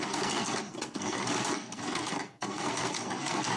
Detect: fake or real fake